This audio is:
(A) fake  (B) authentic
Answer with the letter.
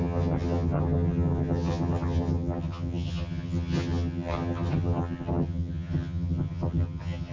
A